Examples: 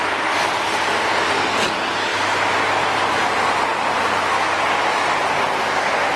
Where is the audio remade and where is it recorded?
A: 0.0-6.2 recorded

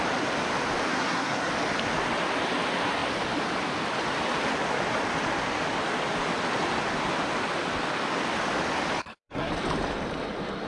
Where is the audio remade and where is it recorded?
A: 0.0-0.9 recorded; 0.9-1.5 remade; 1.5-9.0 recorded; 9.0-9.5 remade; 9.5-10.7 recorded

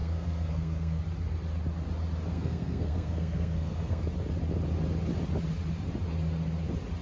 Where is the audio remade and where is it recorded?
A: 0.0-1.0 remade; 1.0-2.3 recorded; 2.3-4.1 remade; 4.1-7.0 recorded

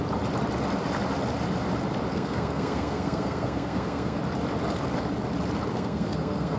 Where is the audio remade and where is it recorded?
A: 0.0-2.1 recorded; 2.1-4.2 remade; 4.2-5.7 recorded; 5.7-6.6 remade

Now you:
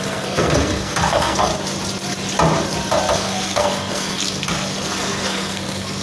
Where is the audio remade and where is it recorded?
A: 0.0-1.5 remade; 1.5-3.1 recorded; 3.1-6.0 remade

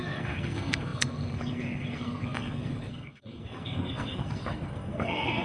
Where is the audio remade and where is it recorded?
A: 0.0-5.4 remade

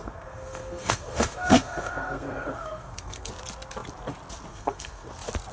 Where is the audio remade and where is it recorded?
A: 0.0-3.3 remade; 3.3-4.5 recorded; 4.5-5.1 remade; 5.1-5.5 recorded